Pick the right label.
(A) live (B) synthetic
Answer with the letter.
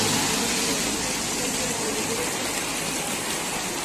A